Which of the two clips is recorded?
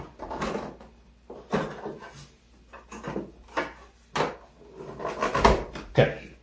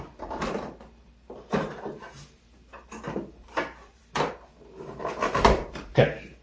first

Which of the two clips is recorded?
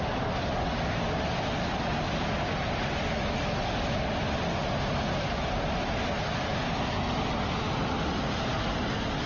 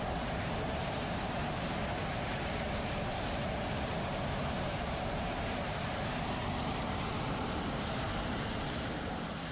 first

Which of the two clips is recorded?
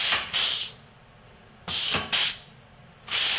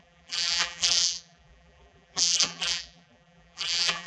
first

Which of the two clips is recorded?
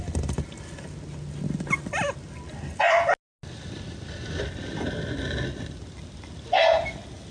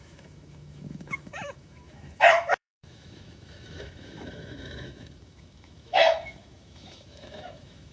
first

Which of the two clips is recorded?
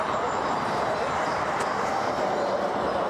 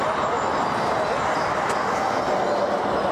second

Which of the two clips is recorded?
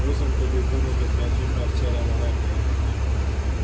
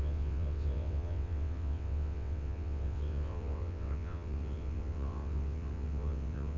first